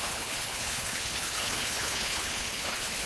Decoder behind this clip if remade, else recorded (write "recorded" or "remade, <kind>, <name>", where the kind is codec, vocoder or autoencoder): remade, codec, HILCodec